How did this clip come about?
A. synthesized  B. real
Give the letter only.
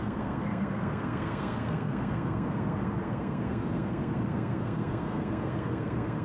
A